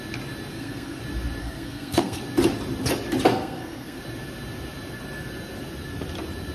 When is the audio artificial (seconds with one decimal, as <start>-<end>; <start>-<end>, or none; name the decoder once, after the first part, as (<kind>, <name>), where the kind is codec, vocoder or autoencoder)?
0.5-1.0 (codec, SNAC); 1.4-2.2; 3.3-4.0